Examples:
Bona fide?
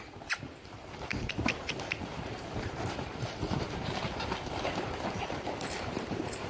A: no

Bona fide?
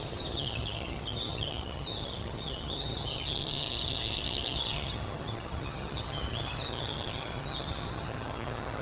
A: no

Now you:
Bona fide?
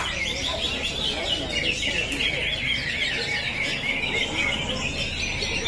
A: yes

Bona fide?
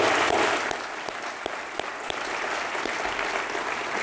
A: yes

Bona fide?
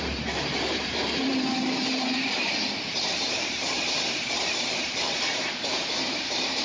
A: no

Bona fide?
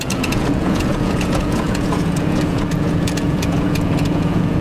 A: no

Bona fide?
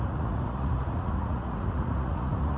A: no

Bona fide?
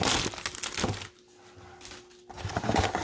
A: yes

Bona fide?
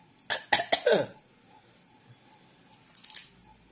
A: yes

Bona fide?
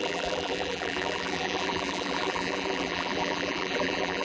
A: no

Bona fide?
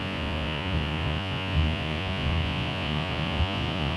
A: no